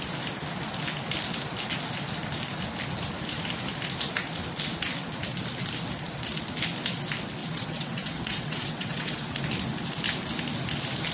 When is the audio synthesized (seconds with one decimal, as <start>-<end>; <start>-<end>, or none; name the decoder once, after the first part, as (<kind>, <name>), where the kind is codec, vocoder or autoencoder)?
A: 7.4-9.4 (vocoder, WaveNeXt)